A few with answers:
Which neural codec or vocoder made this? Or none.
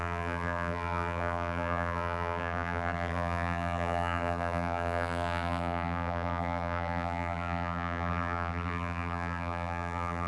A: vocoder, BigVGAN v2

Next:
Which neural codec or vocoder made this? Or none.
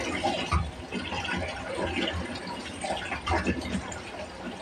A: none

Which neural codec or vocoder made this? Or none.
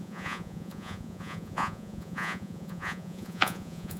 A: vocoder, Vocos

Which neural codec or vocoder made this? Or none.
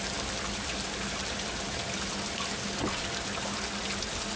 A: none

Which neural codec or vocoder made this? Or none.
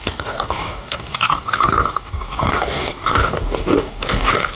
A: codec, DAC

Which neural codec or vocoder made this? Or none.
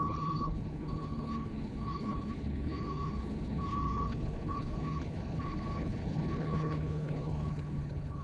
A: codec, HILCodec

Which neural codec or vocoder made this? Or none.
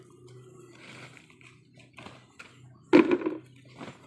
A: none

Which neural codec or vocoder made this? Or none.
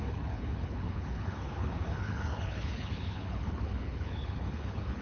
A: codec, HILCodec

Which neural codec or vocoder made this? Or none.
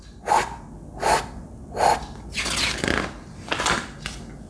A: none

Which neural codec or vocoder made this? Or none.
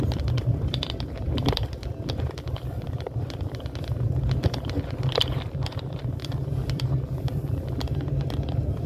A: vocoder, BigVGAN v2